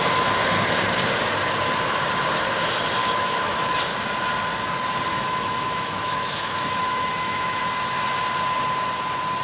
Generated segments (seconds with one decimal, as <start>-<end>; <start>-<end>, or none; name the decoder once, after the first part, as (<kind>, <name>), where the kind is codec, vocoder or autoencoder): 3.0-3.8 (autoencoder, DAC-VAE); 5.1-7.6